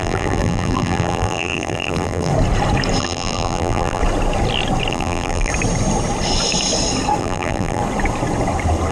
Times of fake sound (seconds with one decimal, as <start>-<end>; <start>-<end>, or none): 0.0-2.3; 3.0-4.0; 4.9-5.5; 7.2-7.8